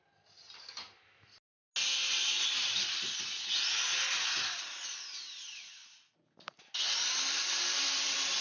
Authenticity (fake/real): real